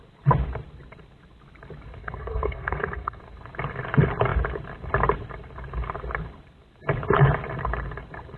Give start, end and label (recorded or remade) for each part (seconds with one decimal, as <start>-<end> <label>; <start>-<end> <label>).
0.0-2.0 recorded; 2.0-3.2 remade; 3.2-8.4 recorded

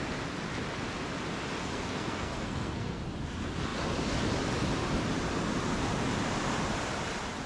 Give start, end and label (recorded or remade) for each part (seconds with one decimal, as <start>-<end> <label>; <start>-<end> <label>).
0.0-1.6 recorded; 1.6-3.0 remade; 3.0-7.5 recorded

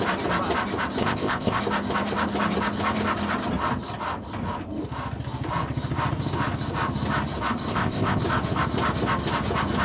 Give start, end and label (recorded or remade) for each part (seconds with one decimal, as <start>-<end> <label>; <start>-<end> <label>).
0.0-1.0 recorded; 1.0-1.6 remade; 1.6-7.7 recorded; 7.7-8.2 remade; 8.2-9.8 recorded

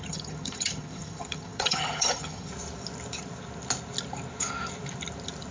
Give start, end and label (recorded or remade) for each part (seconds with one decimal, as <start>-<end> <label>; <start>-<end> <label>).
0.0-2.5 remade; 2.5-5.5 recorded

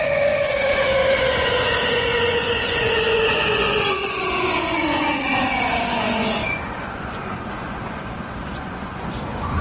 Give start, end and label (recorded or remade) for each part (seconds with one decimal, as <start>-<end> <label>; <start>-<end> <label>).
0.0-9.6 remade

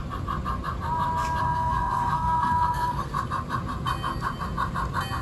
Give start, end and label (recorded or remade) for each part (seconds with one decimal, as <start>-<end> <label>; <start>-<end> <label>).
0.0-1.4 recorded; 1.4-3.1 remade; 3.1-5.2 recorded

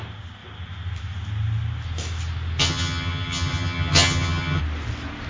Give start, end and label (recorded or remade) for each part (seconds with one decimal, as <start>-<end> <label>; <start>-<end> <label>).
0.0-2.6 recorded; 2.6-4.6 remade; 4.6-5.3 recorded

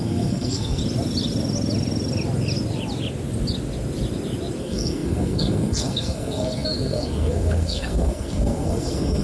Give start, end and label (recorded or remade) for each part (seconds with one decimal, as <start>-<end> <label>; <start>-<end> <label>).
0.0-0.8 remade; 0.8-4.6 recorded; 4.6-9.2 remade